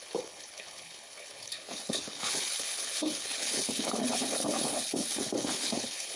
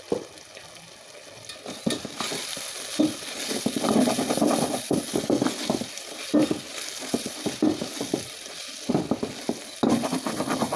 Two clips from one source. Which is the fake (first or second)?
first